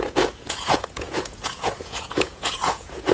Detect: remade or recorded remade